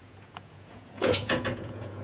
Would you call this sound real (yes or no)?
no